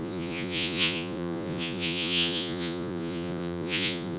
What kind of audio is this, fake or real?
fake